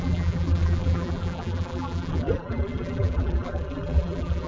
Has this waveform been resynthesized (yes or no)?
yes